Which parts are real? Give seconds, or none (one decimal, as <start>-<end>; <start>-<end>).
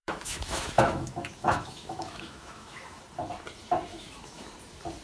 3.0-3.9; 4.5-5.0